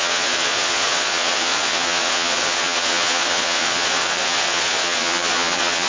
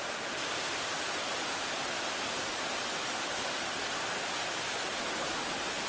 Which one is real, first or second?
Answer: second